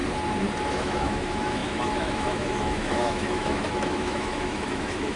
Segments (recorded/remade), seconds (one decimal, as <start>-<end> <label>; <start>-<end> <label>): 0.0-0.7 recorded; 0.7-5.2 remade